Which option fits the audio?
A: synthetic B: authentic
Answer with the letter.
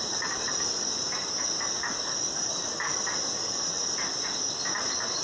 B